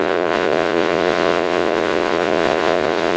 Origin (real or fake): fake